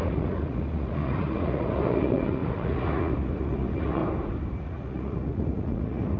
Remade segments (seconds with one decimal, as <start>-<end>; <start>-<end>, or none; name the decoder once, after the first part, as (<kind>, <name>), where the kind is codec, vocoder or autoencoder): 0.0-4.0 (vocoder, Vocos); 4.6-6.2